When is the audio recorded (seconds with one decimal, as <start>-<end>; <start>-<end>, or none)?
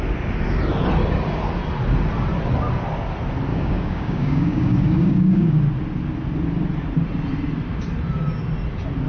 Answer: 0.0-3.5; 5.6-9.1